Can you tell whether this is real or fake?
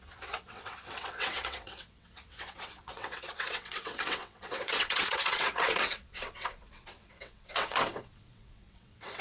fake